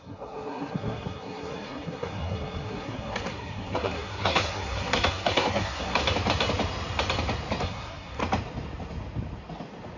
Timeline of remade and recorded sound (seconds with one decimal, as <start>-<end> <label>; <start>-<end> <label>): 0.0-6.0 remade; 6.0-7.6 recorded; 7.6-8.2 remade; 8.2-10.0 recorded